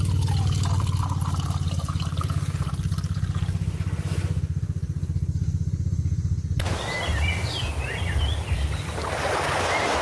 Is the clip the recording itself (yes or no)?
yes